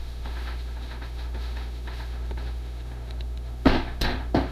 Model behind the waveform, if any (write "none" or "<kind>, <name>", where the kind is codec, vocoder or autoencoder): autoencoder, DAC-VAE